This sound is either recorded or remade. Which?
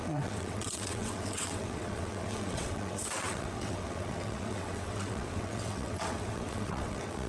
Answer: remade